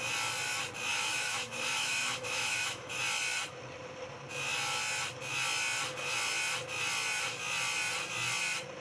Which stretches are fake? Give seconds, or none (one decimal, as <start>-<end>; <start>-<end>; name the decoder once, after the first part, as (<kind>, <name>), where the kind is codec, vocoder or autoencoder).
0.9-3.0 (autoencoder, DAC-VAE)

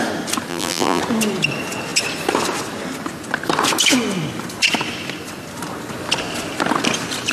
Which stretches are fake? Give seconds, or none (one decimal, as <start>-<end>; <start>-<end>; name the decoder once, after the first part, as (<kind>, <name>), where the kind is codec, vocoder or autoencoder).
0.5-1.0 (vocoder, BigVGAN v2)